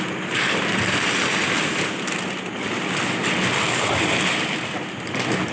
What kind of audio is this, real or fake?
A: real